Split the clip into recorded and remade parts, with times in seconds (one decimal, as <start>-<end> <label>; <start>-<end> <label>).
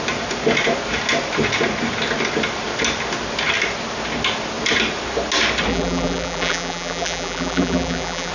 0.0-5.7 recorded; 5.7-8.3 remade